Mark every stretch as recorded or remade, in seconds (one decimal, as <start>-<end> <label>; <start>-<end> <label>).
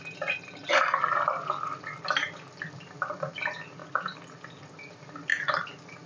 0.0-6.1 recorded